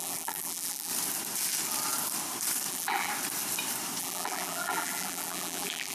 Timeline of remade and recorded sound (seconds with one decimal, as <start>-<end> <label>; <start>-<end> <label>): 0.0-0.9 remade; 0.9-2.7 recorded; 2.7-3.1 remade; 3.1-4.0 recorded; 4.0-5.9 remade